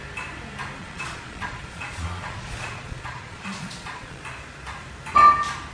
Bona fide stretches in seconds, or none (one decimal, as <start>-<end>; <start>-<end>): 0.0-0.8; 4.2-5.7